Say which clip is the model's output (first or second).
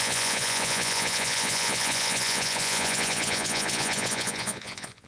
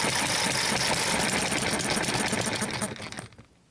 first